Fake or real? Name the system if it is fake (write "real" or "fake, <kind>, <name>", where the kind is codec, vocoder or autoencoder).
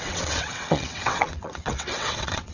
fake, vocoder, WaveNeXt